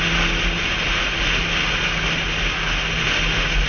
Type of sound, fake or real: real